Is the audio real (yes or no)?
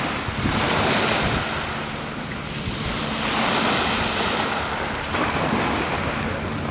yes